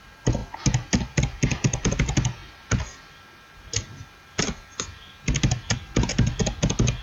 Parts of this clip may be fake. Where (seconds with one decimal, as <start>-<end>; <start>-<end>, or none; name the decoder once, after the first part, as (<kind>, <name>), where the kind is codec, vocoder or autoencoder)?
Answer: none

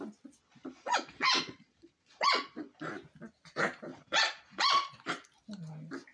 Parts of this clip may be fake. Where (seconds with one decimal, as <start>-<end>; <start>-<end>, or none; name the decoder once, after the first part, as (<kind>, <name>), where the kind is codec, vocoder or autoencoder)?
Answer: 0.4-2.9 (vocoder, Vocos); 3.9-4.9